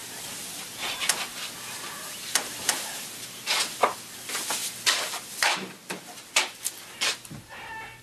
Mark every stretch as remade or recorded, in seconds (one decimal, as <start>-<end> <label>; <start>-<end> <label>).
0.0-8.0 recorded